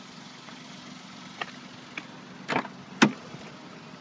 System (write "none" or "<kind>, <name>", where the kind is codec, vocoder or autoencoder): none